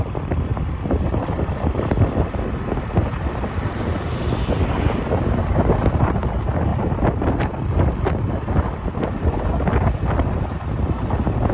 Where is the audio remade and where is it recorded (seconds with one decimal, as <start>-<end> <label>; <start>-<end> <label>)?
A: 0.0-0.5 recorded; 0.5-2.4 remade; 2.4-6.7 recorded; 6.7-8.1 remade; 8.1-11.5 recorded